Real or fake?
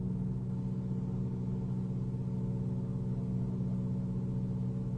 real